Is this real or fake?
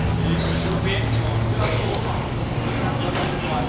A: real